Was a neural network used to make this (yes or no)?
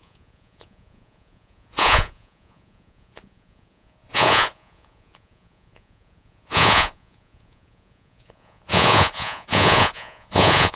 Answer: yes